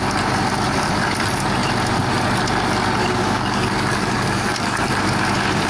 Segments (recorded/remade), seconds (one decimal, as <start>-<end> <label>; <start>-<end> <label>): 0.0-3.0 recorded; 3.0-4.9 remade; 4.9-5.7 recorded